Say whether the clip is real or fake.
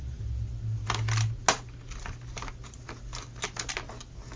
real